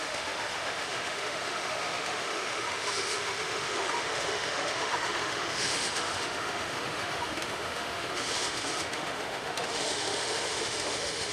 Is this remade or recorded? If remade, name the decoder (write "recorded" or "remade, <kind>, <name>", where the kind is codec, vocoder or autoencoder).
remade, autoencoder, DAC-VAE